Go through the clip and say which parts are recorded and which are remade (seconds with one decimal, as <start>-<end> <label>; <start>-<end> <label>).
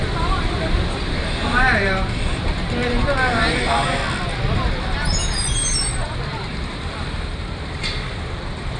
0.0-4.0 remade; 4.0-4.8 recorded; 4.8-8.8 remade